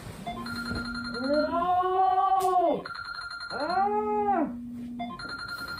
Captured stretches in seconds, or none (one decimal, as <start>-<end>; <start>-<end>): 0.0-1.4; 3.2-5.8